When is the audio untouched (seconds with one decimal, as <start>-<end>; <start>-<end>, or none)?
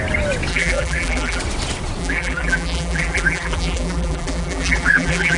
0.0-0.5; 1.4-2.0